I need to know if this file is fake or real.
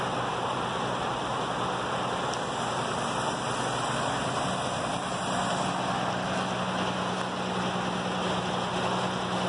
real